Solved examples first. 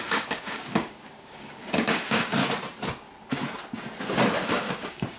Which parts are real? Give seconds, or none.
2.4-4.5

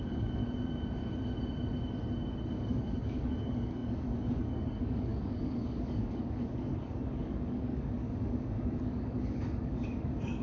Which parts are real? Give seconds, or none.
0.4-2.5

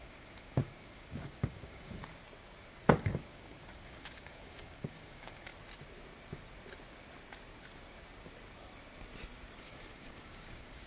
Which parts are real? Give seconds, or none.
2.0-2.9; 5.5-9.6

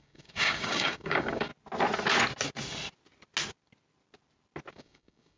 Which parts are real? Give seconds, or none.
1.5-4.7